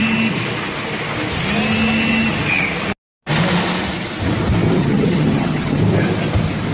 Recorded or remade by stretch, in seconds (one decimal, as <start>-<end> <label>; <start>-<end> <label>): 0.0-4.8 recorded; 4.8-5.8 remade; 5.8-6.7 recorded

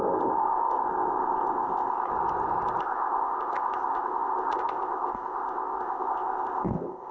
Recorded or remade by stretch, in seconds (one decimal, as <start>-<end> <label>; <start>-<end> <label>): 0.0-2.1 remade; 2.1-2.8 recorded; 2.8-7.1 remade

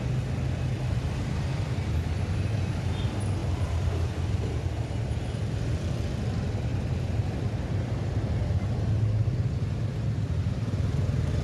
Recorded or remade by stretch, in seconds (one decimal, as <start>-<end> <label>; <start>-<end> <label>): 0.0-3.4 recorded; 3.4-5.5 remade; 5.5-11.4 recorded